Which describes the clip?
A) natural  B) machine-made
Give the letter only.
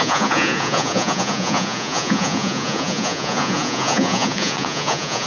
B